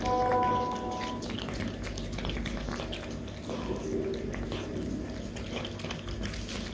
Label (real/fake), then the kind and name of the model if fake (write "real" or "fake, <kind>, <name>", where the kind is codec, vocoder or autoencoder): real